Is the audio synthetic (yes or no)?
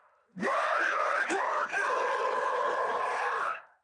no